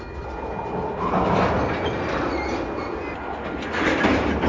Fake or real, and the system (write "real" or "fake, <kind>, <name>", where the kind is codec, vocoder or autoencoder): real